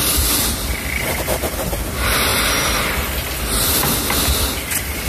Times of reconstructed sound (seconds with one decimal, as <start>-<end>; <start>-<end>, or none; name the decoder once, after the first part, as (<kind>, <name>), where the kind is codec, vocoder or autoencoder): none